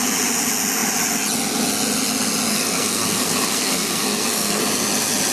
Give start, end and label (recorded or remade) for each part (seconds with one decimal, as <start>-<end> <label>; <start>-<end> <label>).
0.0-2.5 recorded; 2.5-4.6 remade; 4.6-5.3 recorded